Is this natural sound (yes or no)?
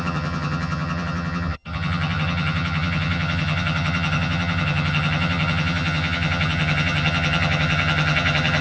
no